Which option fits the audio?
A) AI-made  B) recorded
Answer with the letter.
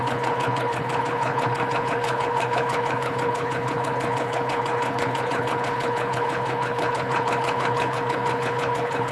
A